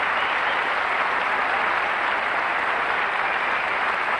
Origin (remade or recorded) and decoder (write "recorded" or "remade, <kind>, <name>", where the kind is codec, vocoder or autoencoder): recorded